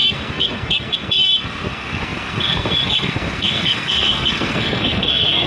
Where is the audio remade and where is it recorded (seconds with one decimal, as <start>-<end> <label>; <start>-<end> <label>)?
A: 0.0-5.5 remade